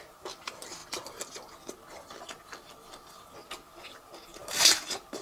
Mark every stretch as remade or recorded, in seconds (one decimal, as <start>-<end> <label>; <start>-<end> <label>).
0.0-0.8 remade; 0.8-3.9 recorded; 3.9-5.2 remade